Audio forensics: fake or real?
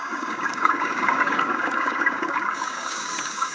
fake